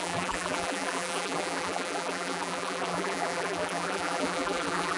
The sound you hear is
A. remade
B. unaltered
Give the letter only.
A